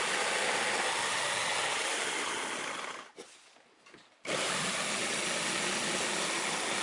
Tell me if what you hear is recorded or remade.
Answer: recorded